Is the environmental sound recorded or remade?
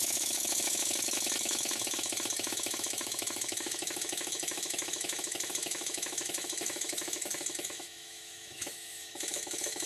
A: remade